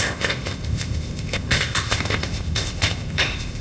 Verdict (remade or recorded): remade